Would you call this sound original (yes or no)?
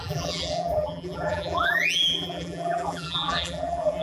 no